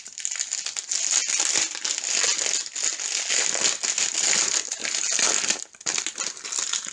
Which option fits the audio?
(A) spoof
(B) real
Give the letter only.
B